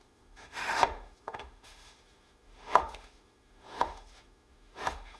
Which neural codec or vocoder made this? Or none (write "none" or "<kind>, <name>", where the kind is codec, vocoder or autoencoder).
autoencoder, DAC-VAE